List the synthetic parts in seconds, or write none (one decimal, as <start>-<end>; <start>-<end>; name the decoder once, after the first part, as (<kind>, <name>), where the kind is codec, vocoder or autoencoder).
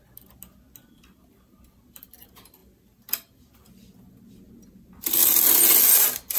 none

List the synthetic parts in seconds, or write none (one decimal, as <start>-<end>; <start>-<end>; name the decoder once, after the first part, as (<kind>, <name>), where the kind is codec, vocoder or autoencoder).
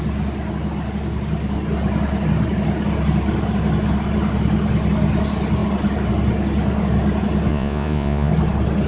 7.5-8.3 (vocoder, Vocos)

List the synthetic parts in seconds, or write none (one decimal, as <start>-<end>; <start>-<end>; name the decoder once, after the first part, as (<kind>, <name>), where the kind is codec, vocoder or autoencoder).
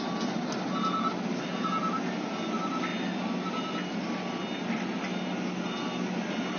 none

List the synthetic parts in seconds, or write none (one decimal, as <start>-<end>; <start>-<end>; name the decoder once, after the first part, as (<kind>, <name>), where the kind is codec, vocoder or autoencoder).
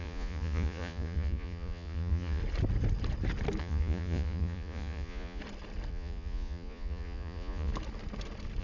0.0-2.4 (vocoder, Vocos); 3.6-5.4; 5.9-7.7